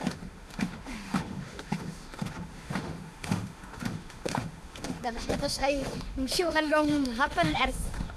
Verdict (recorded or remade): remade